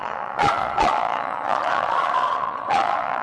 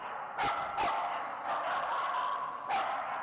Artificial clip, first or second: first